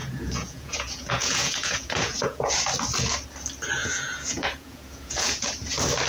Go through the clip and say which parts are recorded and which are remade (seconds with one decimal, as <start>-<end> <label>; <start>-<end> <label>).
0.0-2.5 remade; 2.5-3.8 recorded; 3.8-5.5 remade; 5.5-6.1 recorded